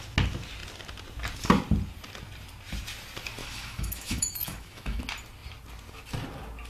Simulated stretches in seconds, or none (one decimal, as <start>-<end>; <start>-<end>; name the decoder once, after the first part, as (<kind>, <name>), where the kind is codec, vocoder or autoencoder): 3.4-5.0 (autoencoder, DAC-VAE)